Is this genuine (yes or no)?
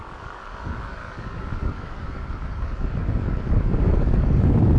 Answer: no